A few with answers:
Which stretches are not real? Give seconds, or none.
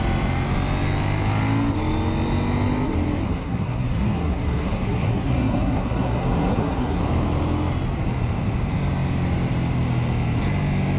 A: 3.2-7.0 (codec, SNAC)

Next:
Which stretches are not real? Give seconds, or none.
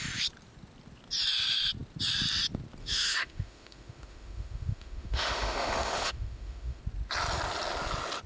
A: 2.8-6.8 (autoencoder, DAC-VAE)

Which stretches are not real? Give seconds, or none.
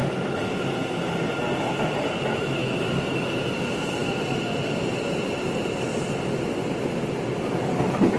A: 2.6-3.3 (autoencoder, DAC-VAE)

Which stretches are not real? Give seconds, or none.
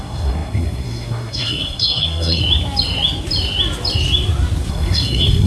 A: 0.0-2.4 (codec, SNAC); 4.7-5.5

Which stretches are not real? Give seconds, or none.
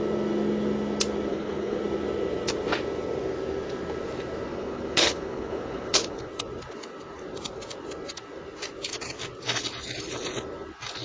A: 1.3-1.8 (codec, HILCodec); 4.5-6.3